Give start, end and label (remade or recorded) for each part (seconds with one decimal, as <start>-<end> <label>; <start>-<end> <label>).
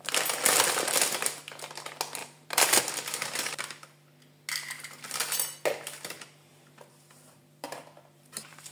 0.0-2.2 recorded; 2.2-2.8 remade; 2.8-6.5 recorded; 6.5-8.7 remade